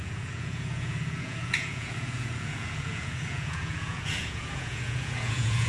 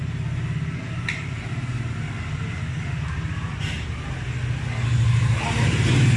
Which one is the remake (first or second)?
first